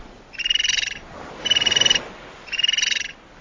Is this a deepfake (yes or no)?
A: no